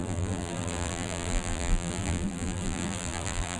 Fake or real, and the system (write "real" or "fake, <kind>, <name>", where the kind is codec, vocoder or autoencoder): fake, vocoder, BigVGAN v2